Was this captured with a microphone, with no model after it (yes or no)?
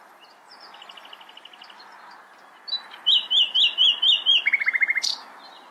yes